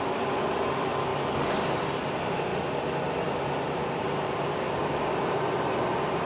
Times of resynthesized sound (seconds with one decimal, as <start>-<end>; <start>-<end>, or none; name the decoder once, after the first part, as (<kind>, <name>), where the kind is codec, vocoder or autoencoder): 4.5-5.4 (codec, DAC)